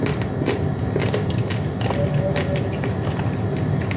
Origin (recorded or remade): recorded